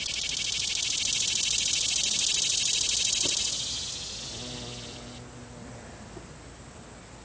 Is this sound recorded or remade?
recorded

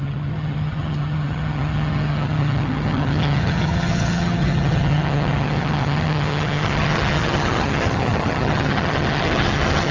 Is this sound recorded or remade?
remade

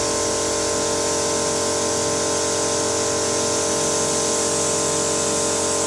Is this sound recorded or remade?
recorded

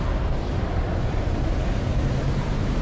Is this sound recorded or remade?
recorded